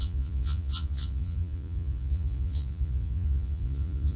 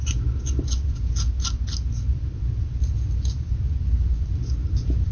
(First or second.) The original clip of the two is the second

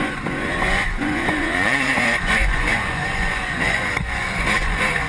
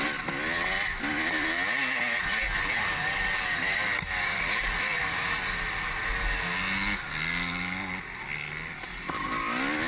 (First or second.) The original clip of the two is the second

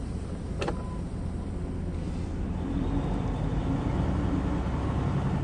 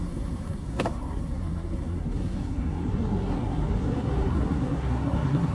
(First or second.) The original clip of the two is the first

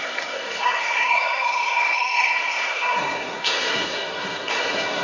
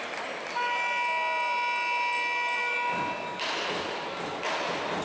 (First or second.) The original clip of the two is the second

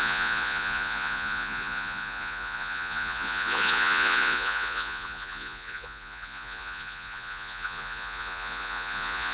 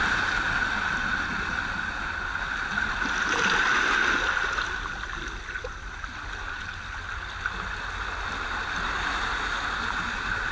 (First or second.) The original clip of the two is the second